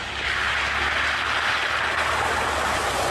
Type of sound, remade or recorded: recorded